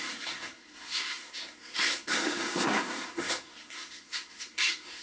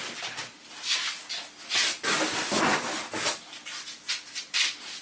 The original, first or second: second